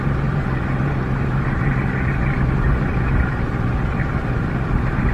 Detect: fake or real real